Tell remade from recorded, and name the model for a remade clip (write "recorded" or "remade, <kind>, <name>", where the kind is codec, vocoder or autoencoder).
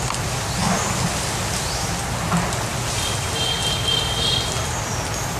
recorded